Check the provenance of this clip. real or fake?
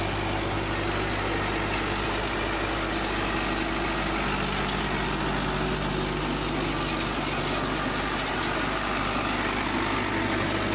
real